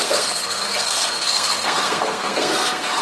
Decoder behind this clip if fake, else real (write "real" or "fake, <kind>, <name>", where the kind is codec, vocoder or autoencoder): fake, codec, SNAC